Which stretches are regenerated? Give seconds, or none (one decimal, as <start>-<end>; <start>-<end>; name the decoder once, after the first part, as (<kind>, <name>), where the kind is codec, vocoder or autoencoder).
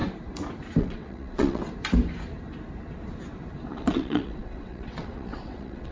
0.8-1.6 (vocoder, WaveNeXt); 3.7-5.9